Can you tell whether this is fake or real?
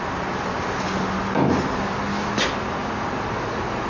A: real